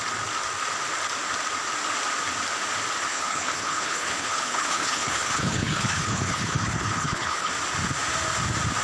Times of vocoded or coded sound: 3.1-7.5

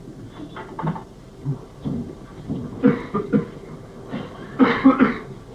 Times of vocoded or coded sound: none

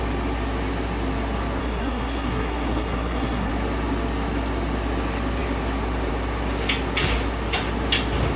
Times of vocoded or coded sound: 1.6-3.5